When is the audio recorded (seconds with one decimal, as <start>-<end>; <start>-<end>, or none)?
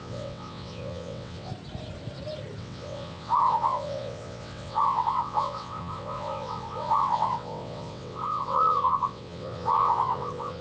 1.5-2.6